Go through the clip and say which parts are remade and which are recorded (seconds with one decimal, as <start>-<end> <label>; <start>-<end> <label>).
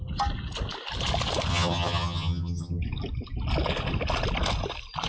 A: 0.0-1.5 recorded; 1.5-2.8 remade; 2.8-5.1 recorded